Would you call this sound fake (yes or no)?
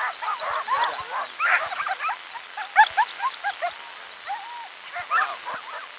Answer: no